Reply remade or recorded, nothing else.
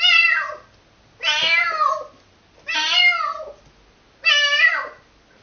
recorded